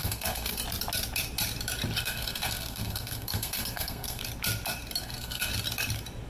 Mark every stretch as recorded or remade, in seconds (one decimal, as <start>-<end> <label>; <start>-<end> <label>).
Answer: 0.0-0.6 remade; 0.6-2.0 recorded; 2.0-4.2 remade; 4.2-5.0 recorded; 5.0-5.5 remade; 5.5-6.3 recorded